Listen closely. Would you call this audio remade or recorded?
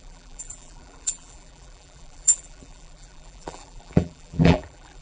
remade